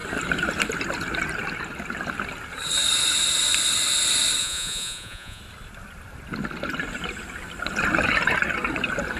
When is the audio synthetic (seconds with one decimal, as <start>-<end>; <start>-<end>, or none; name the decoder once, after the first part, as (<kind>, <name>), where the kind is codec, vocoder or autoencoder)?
4.4-5.4 (vocoder, Vocos)